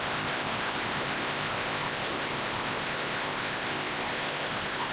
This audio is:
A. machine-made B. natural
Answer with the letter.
A